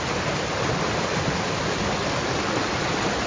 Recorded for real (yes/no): yes